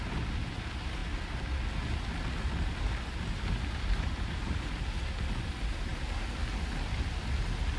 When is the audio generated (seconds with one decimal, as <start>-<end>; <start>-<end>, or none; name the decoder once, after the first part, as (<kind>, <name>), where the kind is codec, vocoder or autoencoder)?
none